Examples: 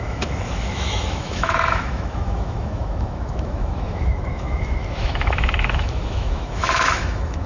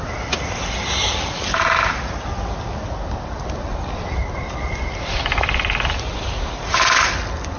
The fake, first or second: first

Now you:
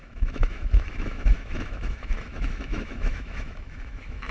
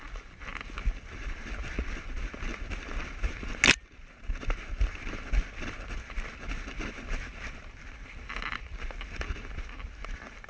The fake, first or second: first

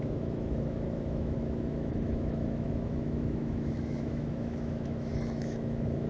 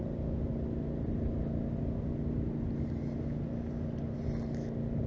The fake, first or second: first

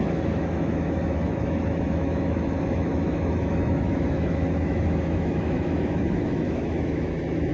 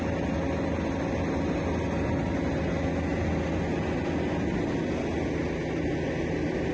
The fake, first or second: first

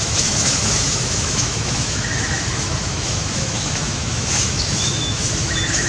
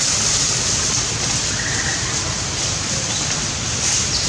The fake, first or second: first